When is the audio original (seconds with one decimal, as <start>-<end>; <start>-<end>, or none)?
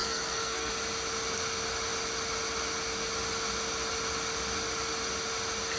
0.7-5.8